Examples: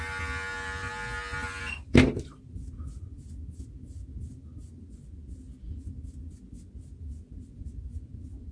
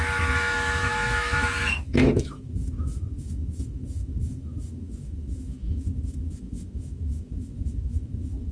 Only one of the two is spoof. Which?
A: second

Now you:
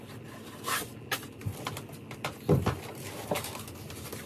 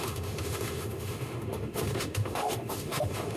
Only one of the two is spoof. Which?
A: second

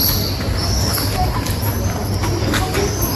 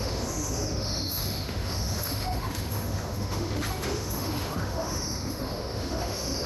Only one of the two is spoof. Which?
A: second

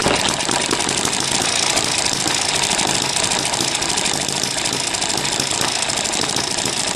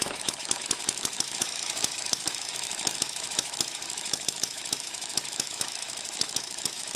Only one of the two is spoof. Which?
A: second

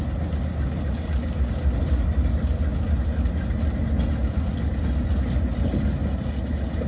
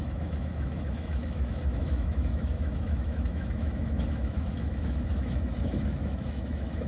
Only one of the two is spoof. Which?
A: second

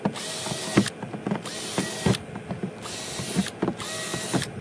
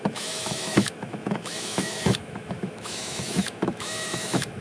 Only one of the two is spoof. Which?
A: second